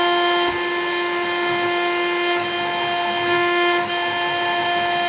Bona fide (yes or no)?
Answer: yes